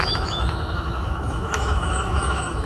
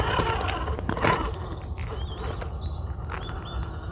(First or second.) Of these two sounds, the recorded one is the second